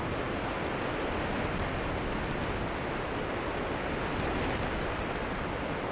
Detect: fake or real real